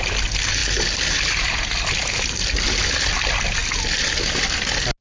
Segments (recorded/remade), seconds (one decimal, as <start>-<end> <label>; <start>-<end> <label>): 0.0-5.0 recorded